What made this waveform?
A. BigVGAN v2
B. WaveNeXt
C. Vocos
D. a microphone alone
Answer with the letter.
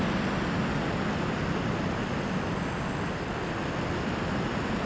D